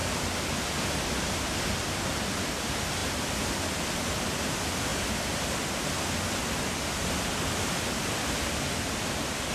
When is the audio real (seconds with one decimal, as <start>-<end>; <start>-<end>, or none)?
0.0-9.5